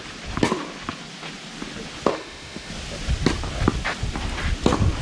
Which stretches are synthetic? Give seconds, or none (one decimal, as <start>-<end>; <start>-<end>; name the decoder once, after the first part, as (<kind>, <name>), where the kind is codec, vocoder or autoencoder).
2.1-2.7 (autoencoder, DAC-VAE)